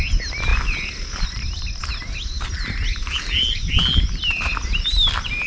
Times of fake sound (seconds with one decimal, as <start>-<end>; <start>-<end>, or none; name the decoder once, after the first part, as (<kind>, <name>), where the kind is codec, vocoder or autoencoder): none

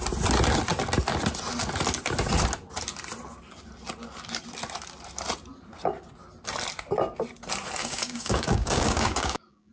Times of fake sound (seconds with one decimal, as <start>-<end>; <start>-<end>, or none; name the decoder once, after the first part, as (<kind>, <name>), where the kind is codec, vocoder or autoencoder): 7.8-9.7 (codec, DAC)

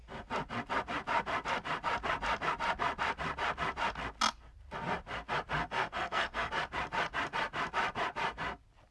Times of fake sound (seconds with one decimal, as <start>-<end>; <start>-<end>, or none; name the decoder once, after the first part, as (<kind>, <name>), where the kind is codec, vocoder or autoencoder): 5.6-6.5 (codec, SNAC)

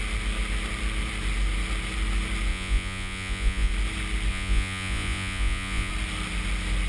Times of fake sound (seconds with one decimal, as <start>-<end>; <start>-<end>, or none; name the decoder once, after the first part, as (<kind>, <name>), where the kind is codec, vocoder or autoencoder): 2.5-3.7 (vocoder, Vocos); 4.3-5.9

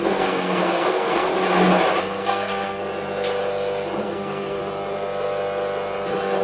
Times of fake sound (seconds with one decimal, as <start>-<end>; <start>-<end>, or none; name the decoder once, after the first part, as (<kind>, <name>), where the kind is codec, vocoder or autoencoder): 0.0-1.3 (codec, SNAC); 2.0-2.8; 4.0-4.6

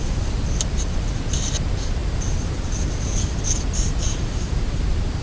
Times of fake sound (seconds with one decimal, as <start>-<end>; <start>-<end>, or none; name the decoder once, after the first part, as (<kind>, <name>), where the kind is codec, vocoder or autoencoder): none

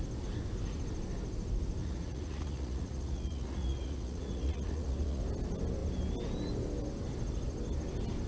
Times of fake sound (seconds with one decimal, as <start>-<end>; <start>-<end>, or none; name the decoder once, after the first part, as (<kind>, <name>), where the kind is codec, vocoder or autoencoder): 1.8-5.2 (vocoder, Vocos)

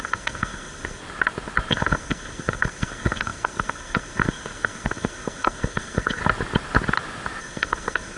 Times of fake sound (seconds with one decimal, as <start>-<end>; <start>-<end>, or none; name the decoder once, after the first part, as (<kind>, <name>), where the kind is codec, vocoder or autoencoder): 0.0-1.0 (codec, SNAC); 1.7-6.2; 7.4-8.2